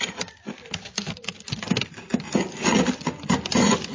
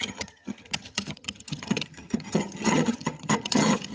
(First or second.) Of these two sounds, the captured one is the first